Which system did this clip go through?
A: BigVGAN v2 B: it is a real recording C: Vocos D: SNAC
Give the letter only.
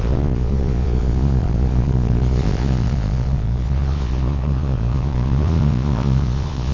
C